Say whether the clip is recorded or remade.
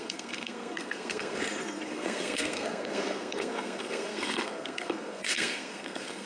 remade